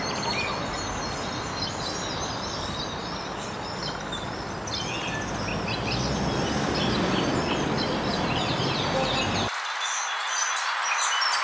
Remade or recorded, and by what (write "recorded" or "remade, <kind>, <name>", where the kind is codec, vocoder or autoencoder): recorded